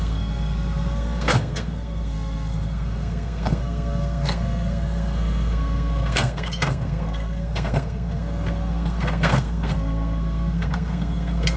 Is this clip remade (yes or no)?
yes